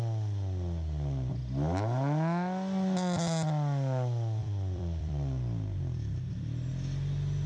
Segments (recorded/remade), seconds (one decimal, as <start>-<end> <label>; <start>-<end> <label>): 0.0-4.4 recorded; 4.4-6.7 remade; 6.7-7.5 recorded